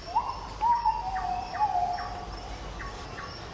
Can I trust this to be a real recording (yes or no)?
yes